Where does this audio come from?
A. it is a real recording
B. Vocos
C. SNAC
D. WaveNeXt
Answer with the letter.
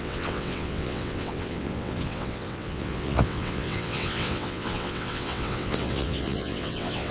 D